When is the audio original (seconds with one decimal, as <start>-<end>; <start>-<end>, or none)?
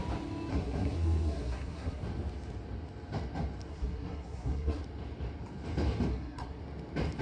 0.0-0.5; 2.0-3.7; 4.8-6.1; 6.6-7.2